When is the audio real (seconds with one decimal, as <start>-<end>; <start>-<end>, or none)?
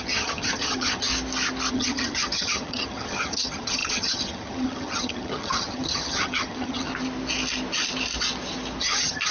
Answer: 1.1-1.7; 6.9-8.8